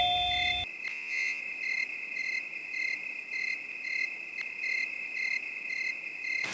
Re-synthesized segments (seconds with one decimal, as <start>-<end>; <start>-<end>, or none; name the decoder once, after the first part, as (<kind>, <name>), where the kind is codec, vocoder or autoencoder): 0.9-1.4 (vocoder, Vocos)